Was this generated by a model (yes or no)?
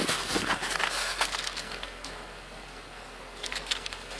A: yes